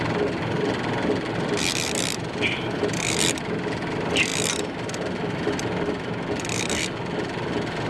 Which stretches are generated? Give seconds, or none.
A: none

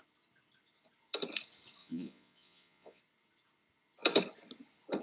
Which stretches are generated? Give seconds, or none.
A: 1.8-3.0 (vocoder, Vocos)

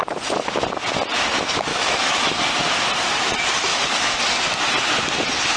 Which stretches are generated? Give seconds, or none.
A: 1.7-2.4 (autoencoder, DAC-VAE); 3.7-4.2

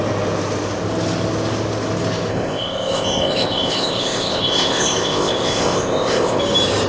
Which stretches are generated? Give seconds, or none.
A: 2.3-6.4 (codec, ZipCodec)

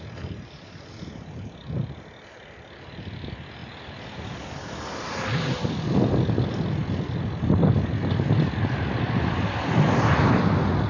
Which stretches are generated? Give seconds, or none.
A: none

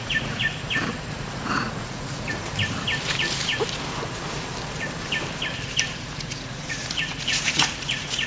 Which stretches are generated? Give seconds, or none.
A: 0.0-0.5 (vocoder, Vocos); 1.1-2.5; 6.0-8.3